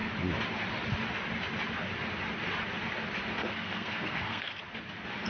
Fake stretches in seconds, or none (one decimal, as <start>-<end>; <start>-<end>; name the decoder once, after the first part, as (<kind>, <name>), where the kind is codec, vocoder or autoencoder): 3.4-4.6 (codec, SNAC)